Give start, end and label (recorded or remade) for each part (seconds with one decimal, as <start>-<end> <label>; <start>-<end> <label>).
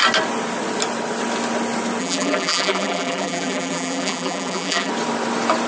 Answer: 0.0-2.0 recorded; 2.0-4.9 remade; 4.9-5.7 recorded